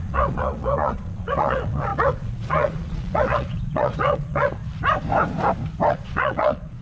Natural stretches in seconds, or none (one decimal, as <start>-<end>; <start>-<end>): 4.6-5.9